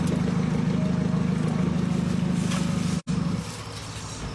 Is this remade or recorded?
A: recorded